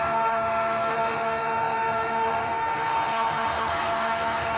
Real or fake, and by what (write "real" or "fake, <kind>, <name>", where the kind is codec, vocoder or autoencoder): fake, autoencoder, DAC-VAE